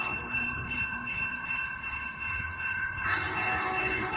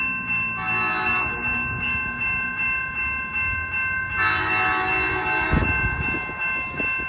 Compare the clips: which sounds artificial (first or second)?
first